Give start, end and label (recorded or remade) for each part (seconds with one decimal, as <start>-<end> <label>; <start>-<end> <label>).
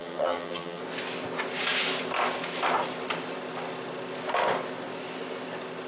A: 0.0-0.8 remade; 0.8-5.9 recorded